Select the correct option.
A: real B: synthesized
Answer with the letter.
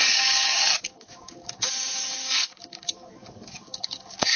B